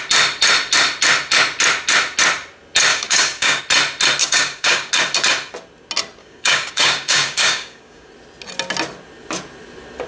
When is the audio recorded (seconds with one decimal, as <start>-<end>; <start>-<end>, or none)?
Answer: 0.0-2.9; 3.6-4.2; 4.9-6.2; 8.1-10.1